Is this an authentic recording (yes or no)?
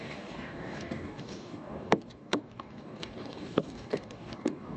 no